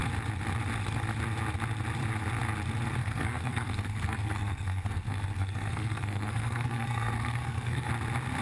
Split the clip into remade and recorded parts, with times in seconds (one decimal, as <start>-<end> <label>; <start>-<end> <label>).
0.0-3.0 recorded; 3.0-7.9 remade; 7.9-8.4 recorded